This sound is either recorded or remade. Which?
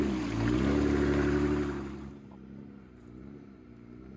recorded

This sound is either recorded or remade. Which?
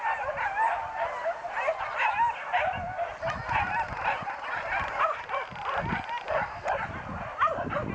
recorded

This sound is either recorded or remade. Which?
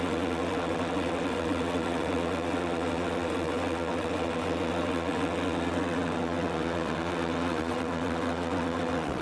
remade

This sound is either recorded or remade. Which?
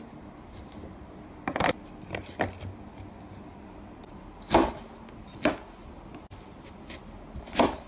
recorded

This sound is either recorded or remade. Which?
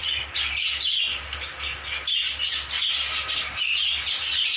recorded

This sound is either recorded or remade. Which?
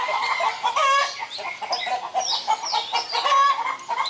recorded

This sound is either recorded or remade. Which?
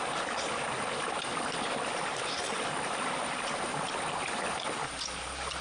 recorded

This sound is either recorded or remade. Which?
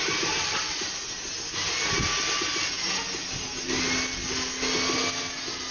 recorded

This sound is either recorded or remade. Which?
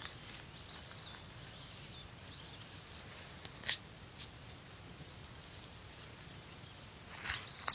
recorded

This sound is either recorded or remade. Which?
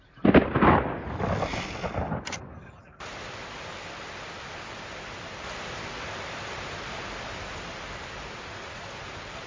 recorded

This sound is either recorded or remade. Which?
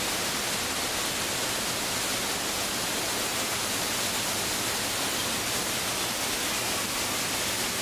recorded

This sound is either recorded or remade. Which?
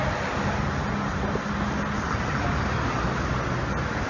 recorded